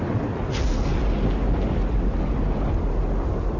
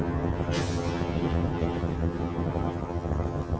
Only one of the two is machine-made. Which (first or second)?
second